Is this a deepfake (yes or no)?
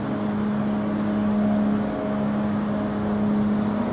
no